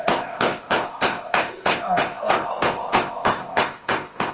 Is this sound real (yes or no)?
no